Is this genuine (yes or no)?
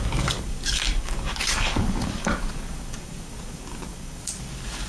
no